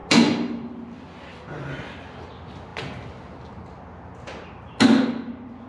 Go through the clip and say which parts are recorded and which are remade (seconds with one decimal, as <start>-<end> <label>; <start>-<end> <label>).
0.0-5.7 recorded